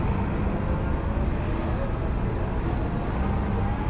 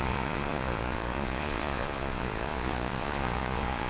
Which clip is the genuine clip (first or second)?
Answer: first